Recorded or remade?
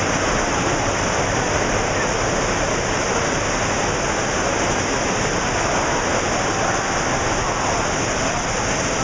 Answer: recorded